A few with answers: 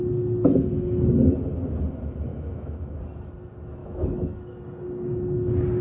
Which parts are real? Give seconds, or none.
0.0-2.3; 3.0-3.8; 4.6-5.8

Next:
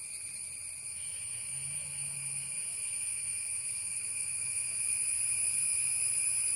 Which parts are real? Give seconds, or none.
0.0-0.9; 4.8-6.5